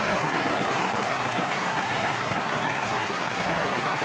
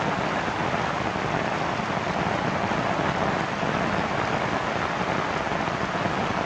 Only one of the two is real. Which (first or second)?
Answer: second